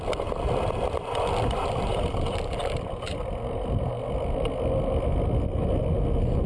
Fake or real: real